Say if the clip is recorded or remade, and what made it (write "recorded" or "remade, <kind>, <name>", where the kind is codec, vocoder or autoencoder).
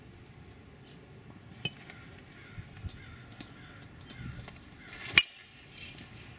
recorded